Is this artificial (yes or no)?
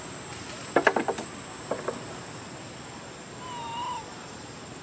no